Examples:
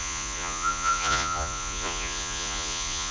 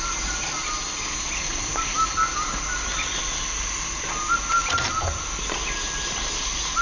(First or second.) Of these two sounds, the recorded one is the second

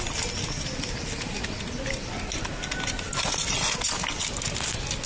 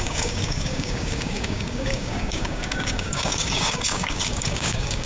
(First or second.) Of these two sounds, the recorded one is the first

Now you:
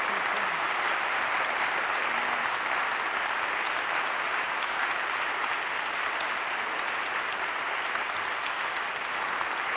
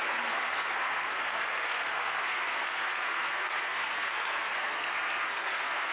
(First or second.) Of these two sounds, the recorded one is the first